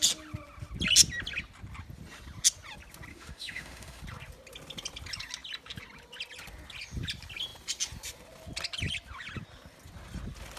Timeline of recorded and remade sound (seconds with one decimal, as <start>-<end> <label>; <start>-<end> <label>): 0.0-3.1 recorded; 3.1-4.0 remade; 4.0-10.6 recorded